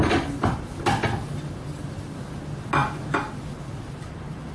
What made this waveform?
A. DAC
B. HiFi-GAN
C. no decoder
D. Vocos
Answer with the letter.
C